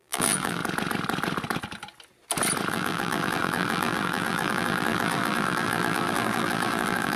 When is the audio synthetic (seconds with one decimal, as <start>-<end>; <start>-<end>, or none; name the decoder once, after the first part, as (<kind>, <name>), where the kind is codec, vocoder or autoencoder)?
0.0-0.6 (vocoder, BigVGAN v2); 2.7-7.2